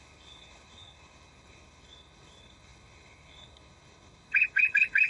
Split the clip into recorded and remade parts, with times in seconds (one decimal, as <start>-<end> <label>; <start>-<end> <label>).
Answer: 0.0-5.1 remade